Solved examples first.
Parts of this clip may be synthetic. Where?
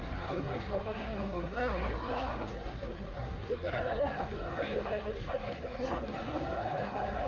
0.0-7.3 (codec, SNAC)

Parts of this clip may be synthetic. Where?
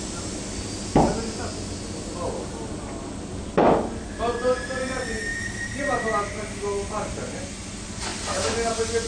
none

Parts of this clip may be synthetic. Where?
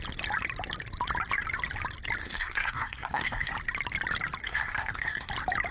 2.2-3.5 (codec, SNAC); 4.4-5.3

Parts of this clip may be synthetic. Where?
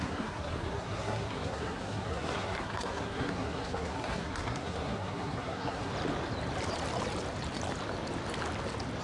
0.0-5.9 (codec, SNAC)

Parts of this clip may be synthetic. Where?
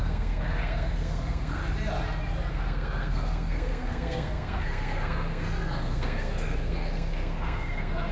0.0-1.6 (codec, SNAC); 2.5-8.1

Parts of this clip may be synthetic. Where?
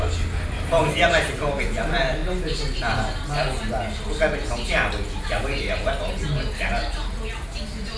none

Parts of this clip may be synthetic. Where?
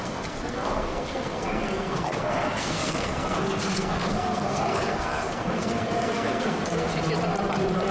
0.0-6.9 (codec, SNAC)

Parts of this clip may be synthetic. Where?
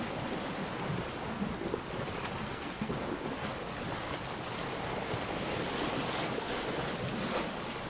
2.4-2.9 (codec, SNAC)